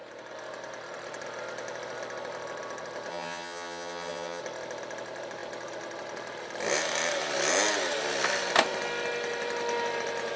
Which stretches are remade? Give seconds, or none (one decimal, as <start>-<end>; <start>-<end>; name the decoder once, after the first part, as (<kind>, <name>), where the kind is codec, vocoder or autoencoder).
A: 3.1-4.4 (vocoder, HiFi-GAN)